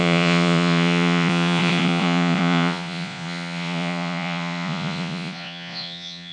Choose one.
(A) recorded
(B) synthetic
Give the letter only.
B